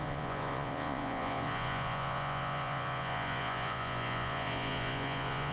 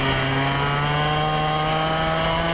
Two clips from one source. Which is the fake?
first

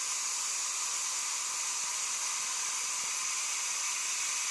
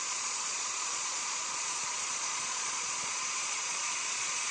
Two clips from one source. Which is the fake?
second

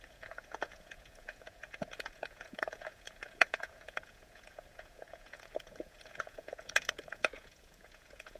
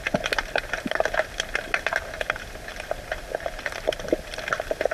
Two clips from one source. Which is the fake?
first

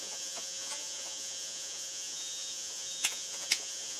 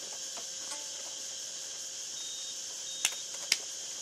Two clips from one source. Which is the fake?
first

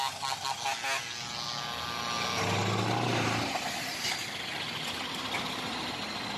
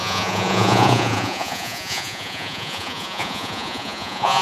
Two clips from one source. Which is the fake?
second